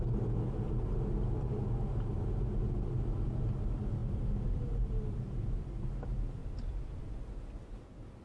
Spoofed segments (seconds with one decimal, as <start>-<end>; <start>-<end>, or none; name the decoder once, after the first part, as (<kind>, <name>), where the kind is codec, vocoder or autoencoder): 4.0-5.9 (vocoder, BigVGAN v2); 6.4-7.0